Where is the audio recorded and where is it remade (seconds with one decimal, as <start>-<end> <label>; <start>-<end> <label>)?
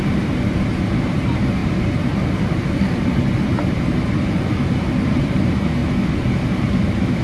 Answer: 0.0-5.8 remade; 5.8-6.5 recorded; 6.5-7.2 remade